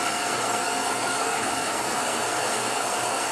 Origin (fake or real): fake